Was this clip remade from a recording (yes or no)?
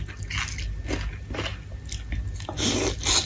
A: no